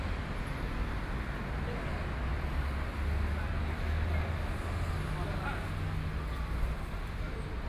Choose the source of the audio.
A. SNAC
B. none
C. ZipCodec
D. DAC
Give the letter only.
B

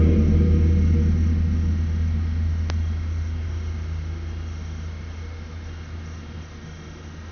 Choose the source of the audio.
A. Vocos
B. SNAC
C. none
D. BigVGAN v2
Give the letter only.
C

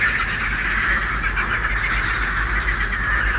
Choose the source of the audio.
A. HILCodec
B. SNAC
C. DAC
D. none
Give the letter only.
D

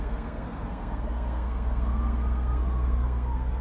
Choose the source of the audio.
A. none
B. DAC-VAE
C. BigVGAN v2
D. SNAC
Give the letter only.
D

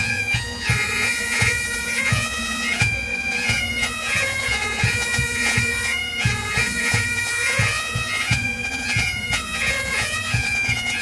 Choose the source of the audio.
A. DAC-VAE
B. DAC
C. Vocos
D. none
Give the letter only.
C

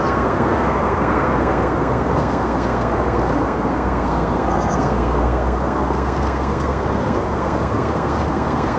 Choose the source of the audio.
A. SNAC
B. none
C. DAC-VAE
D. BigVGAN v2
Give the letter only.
A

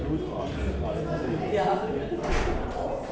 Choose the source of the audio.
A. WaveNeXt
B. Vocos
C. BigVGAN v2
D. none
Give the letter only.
D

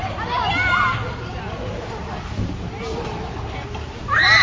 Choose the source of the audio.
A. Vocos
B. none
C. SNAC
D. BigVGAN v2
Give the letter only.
B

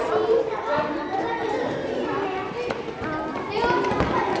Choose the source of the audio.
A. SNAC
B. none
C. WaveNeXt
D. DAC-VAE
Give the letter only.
B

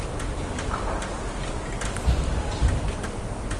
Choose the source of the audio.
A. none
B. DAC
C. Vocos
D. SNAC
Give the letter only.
A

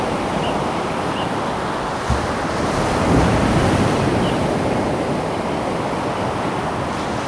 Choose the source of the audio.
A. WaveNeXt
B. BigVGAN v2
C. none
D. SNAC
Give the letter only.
C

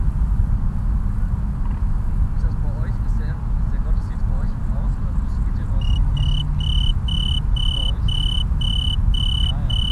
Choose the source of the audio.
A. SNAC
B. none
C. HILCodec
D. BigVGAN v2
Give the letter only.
B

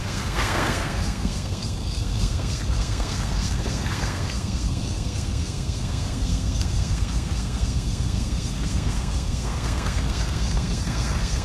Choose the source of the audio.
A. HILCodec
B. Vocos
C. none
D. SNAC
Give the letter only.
D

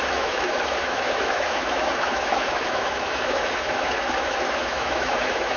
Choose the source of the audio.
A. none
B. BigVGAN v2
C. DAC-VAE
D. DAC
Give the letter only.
C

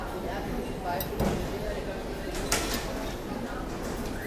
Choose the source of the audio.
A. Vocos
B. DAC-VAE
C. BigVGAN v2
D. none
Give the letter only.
D